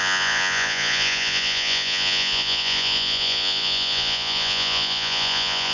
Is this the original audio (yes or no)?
no